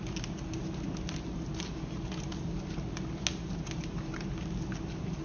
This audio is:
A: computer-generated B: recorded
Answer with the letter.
B